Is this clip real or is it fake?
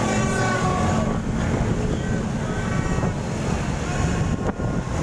real